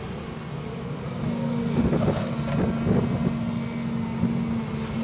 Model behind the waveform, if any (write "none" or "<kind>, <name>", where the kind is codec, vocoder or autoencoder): none